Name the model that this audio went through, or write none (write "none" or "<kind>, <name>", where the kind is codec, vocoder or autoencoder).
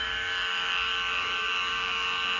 codec, DAC